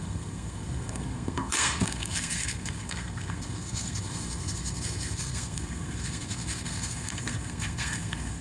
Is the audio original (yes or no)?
no